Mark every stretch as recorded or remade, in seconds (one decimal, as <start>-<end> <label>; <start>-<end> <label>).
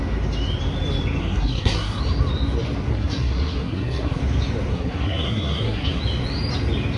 0.0-1.2 recorded; 1.2-2.0 remade; 2.0-2.9 recorded; 2.9-4.2 remade; 4.2-4.7 recorded; 4.7-6.0 remade; 6.0-7.0 recorded